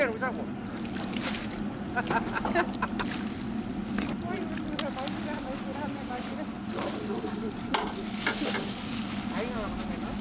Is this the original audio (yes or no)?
yes